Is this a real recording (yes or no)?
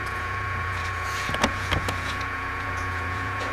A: no